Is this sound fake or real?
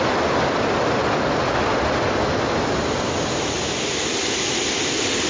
real